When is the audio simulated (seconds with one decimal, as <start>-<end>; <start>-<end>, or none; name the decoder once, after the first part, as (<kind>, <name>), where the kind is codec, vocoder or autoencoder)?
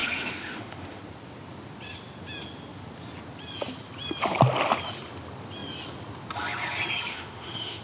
0.0-1.0 (autoencoder, DAC-VAE); 7.1-7.8